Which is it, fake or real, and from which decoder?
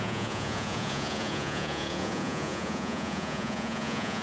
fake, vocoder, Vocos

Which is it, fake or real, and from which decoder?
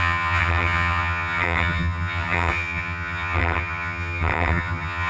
fake, vocoder, HiFi-GAN